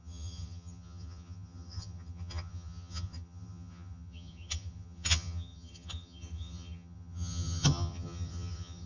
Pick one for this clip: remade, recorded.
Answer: remade